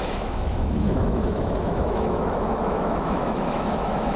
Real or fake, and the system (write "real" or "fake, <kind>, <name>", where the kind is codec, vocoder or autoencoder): fake, autoencoder, DAC-VAE